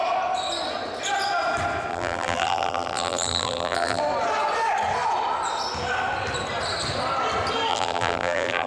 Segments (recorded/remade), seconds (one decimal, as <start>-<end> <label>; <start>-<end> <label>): 0.0-1.9 recorded; 1.9-4.0 remade; 4.0-7.7 recorded; 7.7-8.7 remade